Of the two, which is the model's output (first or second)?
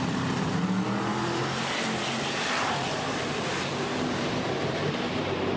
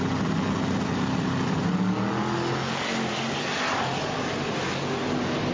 first